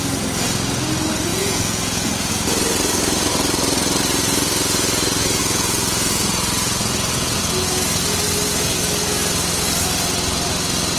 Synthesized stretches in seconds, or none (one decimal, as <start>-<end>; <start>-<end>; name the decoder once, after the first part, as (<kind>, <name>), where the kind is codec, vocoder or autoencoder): 1.3-2.3 (vocoder, Vocos); 5.4-7.4